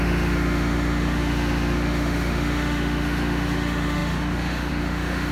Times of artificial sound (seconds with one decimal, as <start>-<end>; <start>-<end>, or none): 0.0-5.3